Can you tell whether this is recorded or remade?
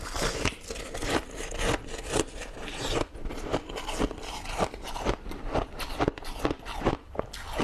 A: recorded